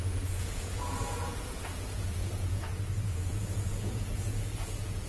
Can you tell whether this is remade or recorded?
remade